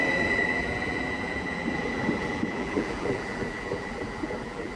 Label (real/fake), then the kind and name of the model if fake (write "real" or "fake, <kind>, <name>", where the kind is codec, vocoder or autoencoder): fake, vocoder, BigVGAN v2